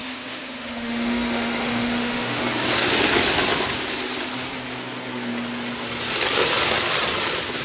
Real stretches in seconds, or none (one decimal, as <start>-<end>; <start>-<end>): 2.4-7.6